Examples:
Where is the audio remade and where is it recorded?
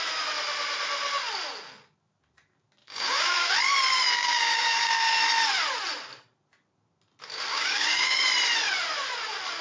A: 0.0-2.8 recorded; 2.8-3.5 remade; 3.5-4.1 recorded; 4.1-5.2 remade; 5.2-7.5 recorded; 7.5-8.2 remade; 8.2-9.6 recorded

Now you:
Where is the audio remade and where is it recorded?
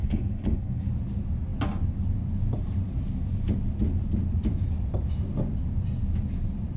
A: 0.0-0.9 remade; 0.9-6.8 recorded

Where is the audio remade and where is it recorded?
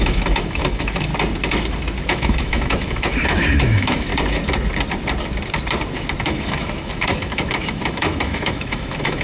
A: 0.0-1.1 remade; 1.1-2.1 recorded; 2.1-4.1 remade; 4.1-6.3 recorded; 6.3-9.2 remade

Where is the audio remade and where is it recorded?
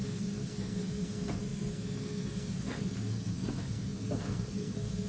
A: 0.0-5.1 remade